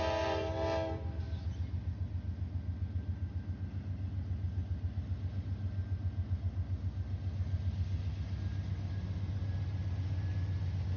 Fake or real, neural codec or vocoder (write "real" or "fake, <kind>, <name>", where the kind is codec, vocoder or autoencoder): real